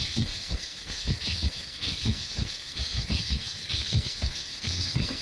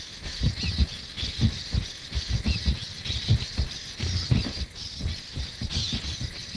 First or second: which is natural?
second